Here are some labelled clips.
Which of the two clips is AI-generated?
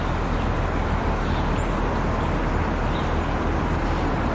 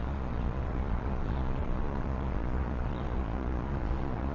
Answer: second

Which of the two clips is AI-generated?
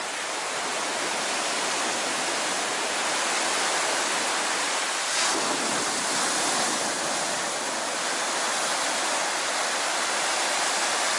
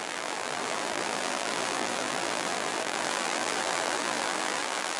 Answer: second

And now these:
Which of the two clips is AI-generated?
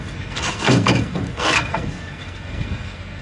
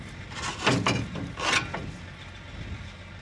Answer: first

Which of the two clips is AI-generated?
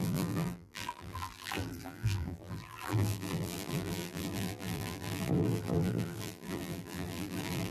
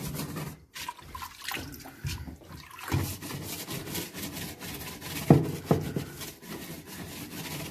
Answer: first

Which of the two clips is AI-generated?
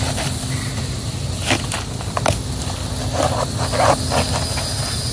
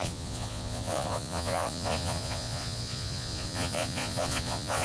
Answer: second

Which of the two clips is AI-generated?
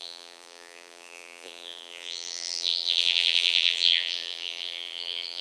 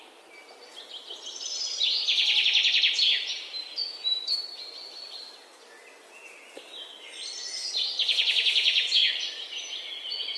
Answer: first